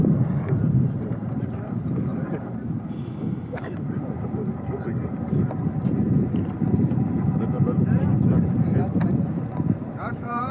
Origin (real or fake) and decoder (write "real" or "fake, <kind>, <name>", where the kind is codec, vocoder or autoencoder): fake, vocoder, BigVGAN v2